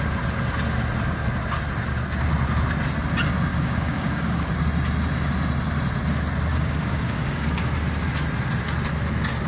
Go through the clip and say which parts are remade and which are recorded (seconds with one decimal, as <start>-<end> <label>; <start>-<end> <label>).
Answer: 0.0-3.5 recorded; 3.5-4.5 remade; 4.5-6.5 recorded; 6.5-7.6 remade; 7.6-9.5 recorded